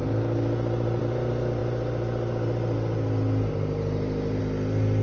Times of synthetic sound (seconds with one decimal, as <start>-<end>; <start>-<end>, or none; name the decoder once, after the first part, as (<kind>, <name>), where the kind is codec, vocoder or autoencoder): none

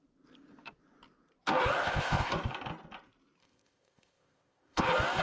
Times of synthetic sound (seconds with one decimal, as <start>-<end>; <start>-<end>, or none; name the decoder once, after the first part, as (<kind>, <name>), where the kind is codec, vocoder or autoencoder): 1.8-2.3 (codec, ZipCodec); 3.4-4.8

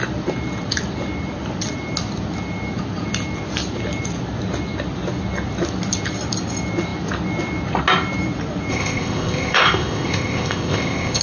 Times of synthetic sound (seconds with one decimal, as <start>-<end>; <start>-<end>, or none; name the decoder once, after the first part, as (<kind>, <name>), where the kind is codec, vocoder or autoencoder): 8.7-11.2 (codec, ZipCodec)

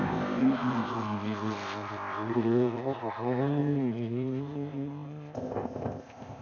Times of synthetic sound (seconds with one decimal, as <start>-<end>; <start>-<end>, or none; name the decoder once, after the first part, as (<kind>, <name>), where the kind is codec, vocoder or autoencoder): 0.0-6.4 (codec, ZipCodec)

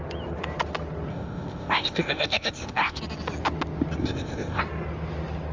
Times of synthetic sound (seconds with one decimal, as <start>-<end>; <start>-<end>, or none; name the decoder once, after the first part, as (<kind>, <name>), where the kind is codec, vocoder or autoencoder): 1.1-3.0 (codec, ZipCodec); 4.0-4.6